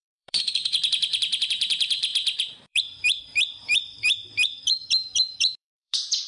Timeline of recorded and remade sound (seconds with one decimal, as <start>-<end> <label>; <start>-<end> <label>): 0.0-6.3 remade